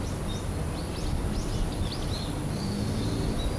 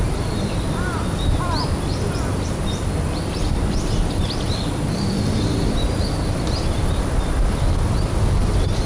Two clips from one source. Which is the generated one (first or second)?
second